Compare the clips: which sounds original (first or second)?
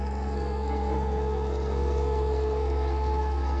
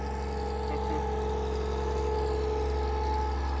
second